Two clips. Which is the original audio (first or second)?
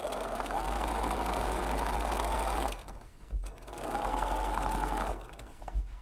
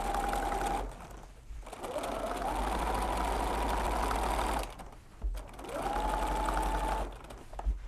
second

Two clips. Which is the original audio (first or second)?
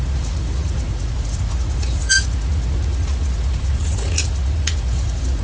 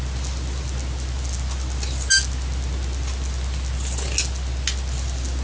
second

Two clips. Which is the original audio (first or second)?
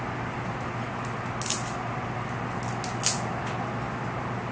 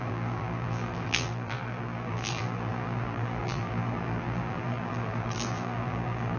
first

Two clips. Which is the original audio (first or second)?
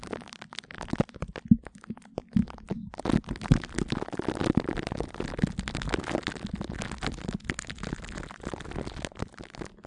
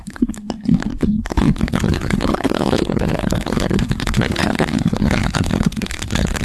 first